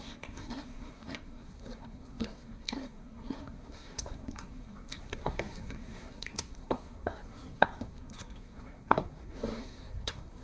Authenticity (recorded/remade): remade